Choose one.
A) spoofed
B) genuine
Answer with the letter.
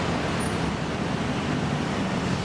B